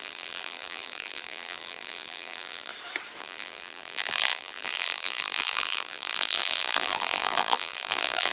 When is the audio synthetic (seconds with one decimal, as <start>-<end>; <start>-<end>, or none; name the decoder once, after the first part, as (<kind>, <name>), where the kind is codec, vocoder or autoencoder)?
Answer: 0.0-2.7 (vocoder, BigVGAN v2); 3.2-8.3